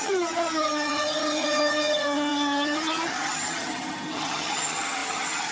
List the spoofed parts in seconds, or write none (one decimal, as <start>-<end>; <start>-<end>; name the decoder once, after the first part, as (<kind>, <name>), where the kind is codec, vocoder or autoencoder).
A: 0.0-5.5 (vocoder, HiFi-GAN)